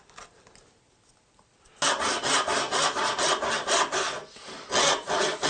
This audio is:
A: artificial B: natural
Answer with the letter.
B